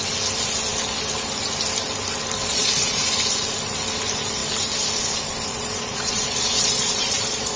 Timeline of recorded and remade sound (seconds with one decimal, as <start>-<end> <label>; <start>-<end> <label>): 0.0-2.4 recorded; 2.4-3.0 remade; 3.0-5.5 recorded; 5.5-7.6 remade